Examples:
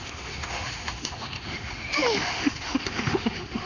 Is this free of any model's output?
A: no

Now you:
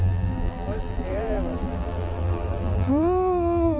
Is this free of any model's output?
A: no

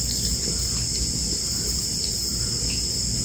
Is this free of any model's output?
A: yes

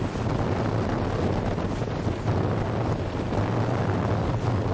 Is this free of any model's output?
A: yes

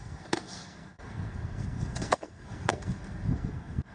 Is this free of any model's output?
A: no